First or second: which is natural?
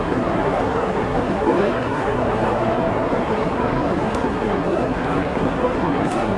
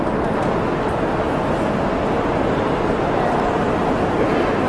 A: second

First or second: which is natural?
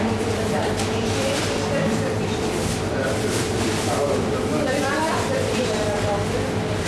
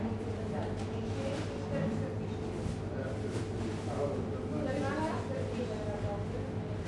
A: second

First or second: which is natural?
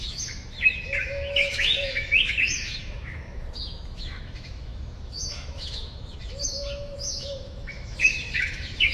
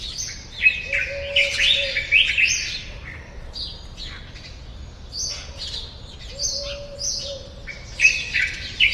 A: second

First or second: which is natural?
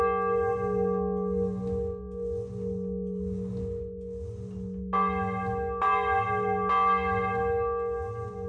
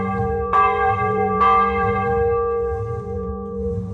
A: first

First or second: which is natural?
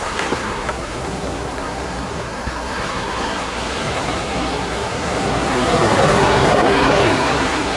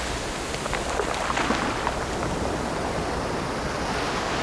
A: second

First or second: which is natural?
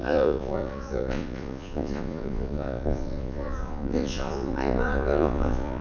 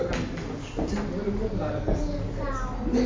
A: second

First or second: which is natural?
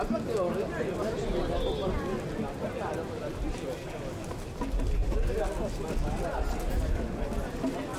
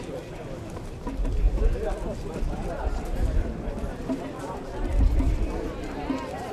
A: first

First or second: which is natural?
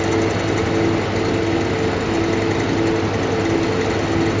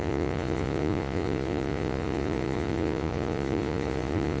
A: first